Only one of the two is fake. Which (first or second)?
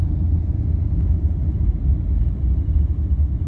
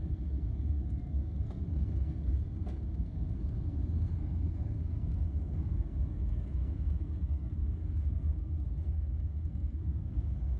second